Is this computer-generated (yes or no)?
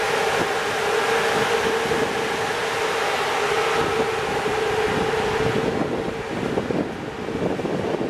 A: no